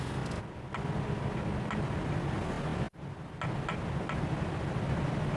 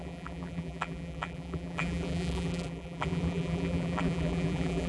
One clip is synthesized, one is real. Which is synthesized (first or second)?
second